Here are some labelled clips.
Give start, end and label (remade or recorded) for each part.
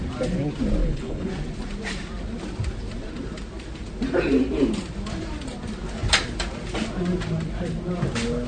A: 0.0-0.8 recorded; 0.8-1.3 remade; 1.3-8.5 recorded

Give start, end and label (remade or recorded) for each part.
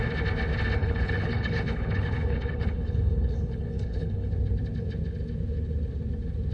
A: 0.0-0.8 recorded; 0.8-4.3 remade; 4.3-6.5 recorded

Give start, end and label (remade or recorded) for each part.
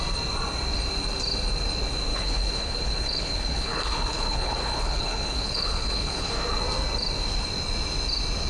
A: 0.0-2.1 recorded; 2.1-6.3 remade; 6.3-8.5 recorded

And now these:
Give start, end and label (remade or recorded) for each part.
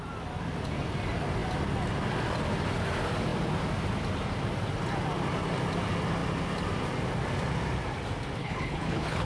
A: 0.0-8.4 recorded; 8.4-9.3 remade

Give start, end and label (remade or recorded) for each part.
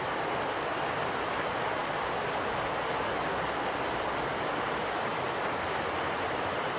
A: 0.0-6.8 recorded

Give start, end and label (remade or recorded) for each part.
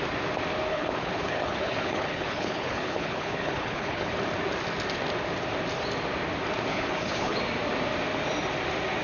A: 0.0-0.7 recorded; 0.7-4.2 remade; 4.2-6.7 recorded; 6.7-7.4 remade; 7.4-9.0 recorded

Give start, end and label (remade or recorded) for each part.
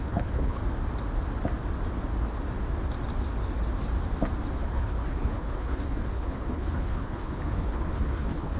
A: 0.0-0.6 remade; 0.6-4.5 recorded; 4.5-8.6 remade